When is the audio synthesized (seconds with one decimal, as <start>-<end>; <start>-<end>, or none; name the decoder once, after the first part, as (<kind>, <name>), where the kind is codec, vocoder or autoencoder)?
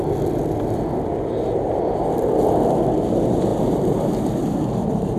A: 3.5-5.2 (vocoder, BigVGAN v2)